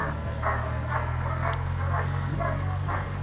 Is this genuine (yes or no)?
no